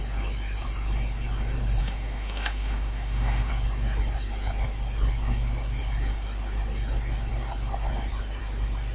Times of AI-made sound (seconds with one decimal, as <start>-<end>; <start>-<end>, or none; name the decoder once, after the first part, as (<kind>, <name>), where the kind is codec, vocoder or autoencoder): 1.8-3.5 (autoencoder, DAC-VAE)